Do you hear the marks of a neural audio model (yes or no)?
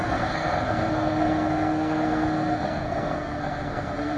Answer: yes